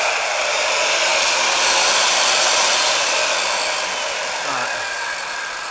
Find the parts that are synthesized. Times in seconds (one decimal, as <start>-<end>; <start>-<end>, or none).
none